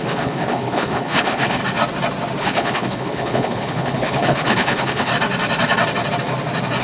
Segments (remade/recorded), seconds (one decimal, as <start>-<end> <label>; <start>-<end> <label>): 0.0-1.6 remade; 1.6-2.4 recorded; 2.4-5.1 remade; 5.1-6.8 recorded